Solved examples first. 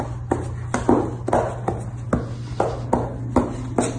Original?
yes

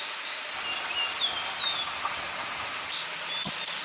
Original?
yes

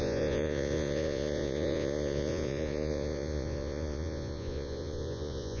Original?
no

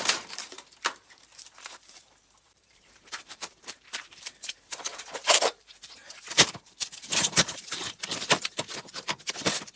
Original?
no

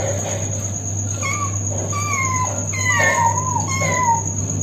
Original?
yes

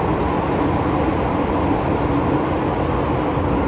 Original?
yes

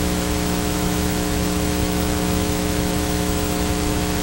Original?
no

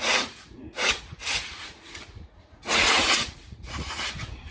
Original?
no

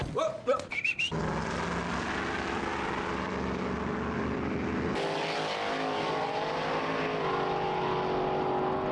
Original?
yes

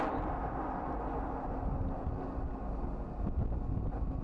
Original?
yes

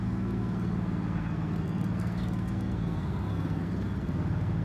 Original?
no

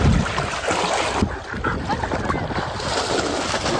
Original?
yes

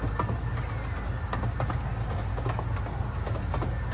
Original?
yes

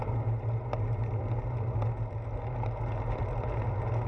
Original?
yes